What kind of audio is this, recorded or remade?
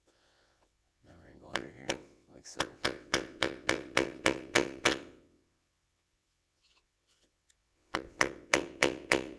remade